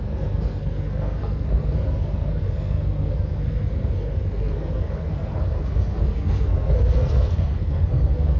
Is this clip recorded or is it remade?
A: remade